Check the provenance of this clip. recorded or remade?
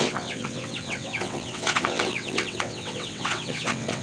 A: remade